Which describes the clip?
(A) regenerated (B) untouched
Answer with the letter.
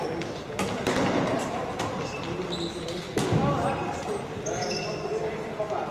B